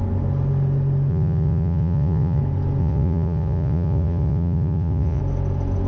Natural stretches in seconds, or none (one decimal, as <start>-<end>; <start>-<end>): 0.0-1.1; 2.4-2.8; 5.2-5.9